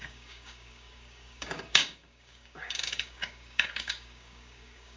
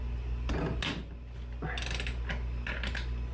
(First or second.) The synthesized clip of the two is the first